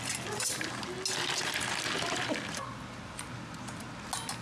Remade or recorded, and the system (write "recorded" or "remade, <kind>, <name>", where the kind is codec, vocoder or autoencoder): recorded